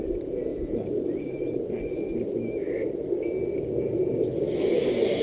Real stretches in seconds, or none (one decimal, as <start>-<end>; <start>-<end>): 0.0-0.5; 1.8-5.2